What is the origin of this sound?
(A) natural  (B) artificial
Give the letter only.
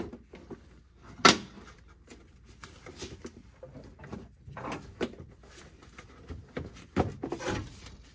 A